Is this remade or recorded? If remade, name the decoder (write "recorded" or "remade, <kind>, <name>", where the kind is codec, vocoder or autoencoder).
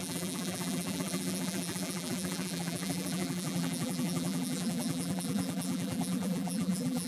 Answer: remade, vocoder, BigVGAN v2